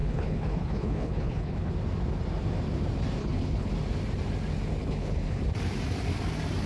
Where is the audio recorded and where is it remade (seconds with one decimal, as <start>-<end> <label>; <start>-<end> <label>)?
0.0-1.7 remade; 1.7-3.2 recorded; 3.2-3.7 remade; 3.7-4.8 recorded; 4.8-5.4 remade; 5.4-6.7 recorded